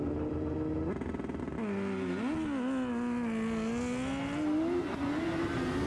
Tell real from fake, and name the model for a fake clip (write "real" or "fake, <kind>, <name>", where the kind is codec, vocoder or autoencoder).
real